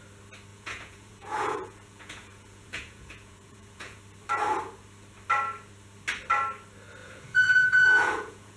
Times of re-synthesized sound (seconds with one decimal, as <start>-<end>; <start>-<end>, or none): 0.5-4.0; 7.0-8.6